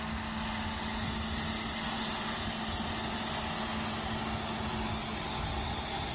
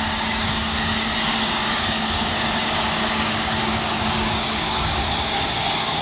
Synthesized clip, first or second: second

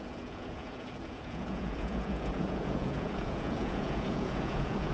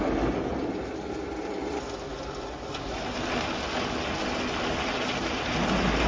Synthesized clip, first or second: first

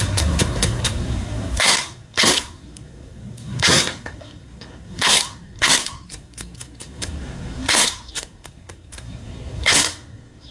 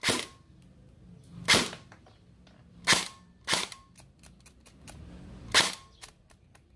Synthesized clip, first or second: first